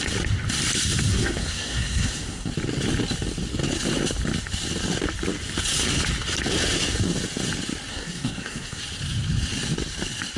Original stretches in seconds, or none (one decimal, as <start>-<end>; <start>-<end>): 0.0-1.1; 2.5-7.9; 8.8-10.4